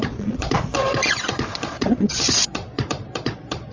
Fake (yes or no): yes